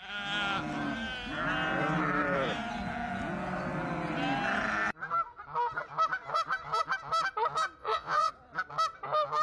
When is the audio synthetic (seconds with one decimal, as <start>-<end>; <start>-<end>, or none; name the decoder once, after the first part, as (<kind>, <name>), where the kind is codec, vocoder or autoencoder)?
7.8-8.3 (vocoder, Vocos)